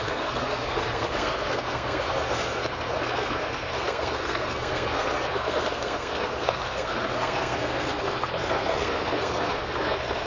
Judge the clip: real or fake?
fake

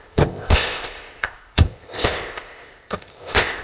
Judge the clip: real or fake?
fake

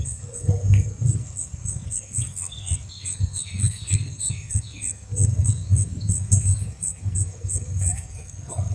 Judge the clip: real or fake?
fake